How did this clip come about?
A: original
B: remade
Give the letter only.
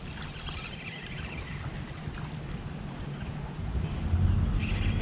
A